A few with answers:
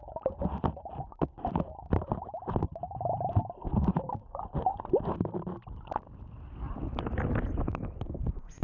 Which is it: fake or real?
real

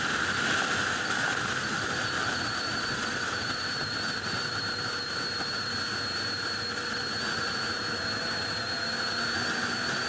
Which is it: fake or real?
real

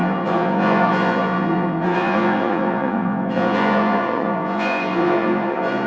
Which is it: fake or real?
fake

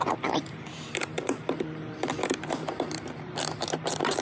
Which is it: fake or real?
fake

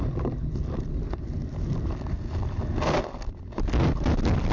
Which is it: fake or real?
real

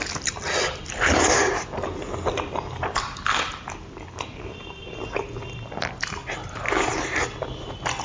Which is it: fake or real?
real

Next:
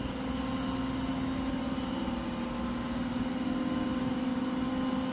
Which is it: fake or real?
real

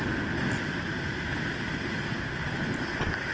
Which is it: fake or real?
real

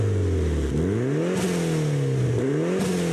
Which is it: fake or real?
real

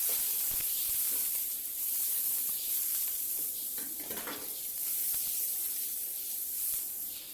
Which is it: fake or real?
fake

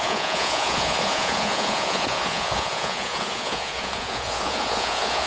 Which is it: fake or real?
fake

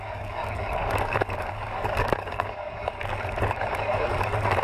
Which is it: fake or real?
fake